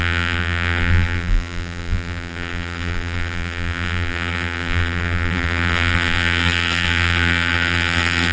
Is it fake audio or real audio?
fake